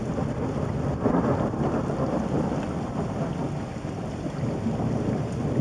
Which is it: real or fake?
real